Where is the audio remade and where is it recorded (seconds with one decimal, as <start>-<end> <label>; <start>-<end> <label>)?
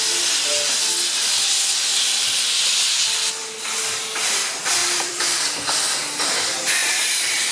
0.0-1.9 recorded; 1.9-2.5 remade; 2.5-4.8 recorded; 4.8-5.4 remade; 5.4-6.8 recorded; 6.8-7.5 remade